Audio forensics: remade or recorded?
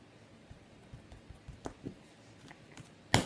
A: recorded